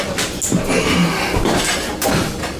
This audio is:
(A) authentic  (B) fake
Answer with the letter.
A